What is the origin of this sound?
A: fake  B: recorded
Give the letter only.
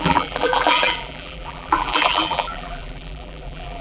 A